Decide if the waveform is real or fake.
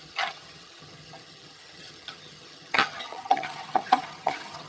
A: fake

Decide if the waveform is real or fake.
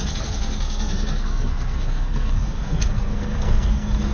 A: fake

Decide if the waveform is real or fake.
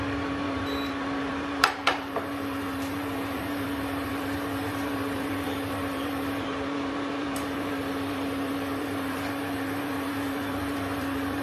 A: fake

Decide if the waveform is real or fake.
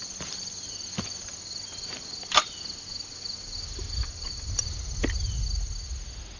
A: real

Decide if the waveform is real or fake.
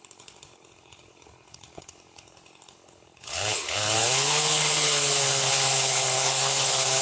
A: fake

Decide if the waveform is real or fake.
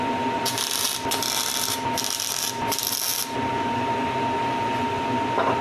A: real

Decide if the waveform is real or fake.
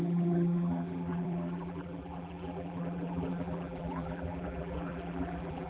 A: fake